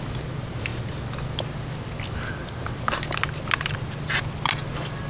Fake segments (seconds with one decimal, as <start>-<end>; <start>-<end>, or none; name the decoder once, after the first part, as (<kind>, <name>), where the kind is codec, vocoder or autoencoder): none